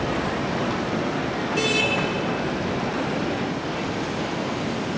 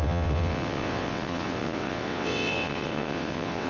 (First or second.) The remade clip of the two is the second